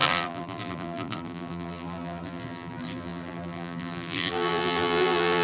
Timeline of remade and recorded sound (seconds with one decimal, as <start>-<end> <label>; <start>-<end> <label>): 0.0-5.4 remade